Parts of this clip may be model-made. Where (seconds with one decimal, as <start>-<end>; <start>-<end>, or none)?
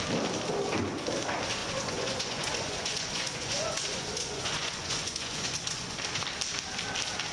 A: 1.6-6.0